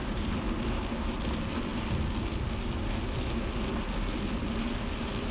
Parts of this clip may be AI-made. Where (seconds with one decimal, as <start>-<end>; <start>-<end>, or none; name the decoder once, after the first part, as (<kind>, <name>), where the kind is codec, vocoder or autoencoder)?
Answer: none